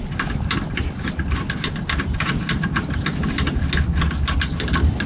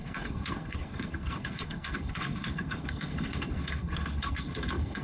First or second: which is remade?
second